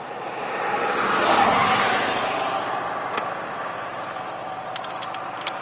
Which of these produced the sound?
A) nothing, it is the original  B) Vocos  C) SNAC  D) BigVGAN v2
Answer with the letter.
A